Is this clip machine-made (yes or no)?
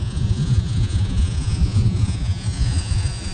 yes